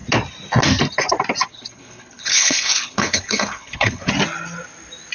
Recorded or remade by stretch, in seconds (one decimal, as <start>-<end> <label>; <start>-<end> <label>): 0.0-1.5 recorded; 1.5-4.1 remade; 4.1-5.1 recorded